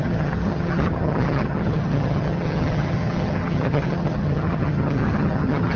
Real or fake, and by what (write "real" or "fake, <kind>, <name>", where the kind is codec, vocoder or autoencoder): fake, vocoder, HiFi-GAN